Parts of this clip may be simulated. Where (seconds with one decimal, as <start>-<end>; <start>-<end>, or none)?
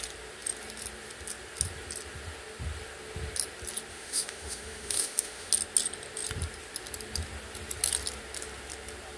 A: 3.9-5.5